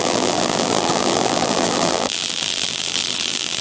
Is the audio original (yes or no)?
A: no